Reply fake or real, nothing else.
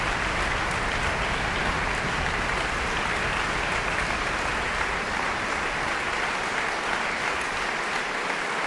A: real